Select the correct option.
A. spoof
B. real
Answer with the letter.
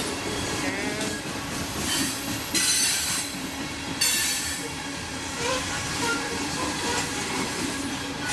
A